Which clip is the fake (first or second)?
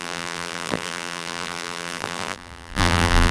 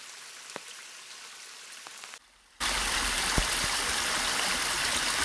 first